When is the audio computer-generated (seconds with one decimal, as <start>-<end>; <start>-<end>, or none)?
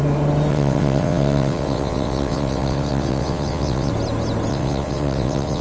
0.5-3.9; 4.5-5.6